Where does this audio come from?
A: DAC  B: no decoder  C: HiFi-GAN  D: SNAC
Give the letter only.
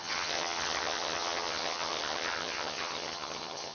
C